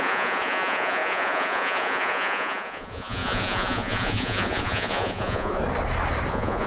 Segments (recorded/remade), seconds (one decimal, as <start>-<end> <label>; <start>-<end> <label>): 0.0-5.6 remade; 5.6-6.3 recorded; 6.3-6.7 remade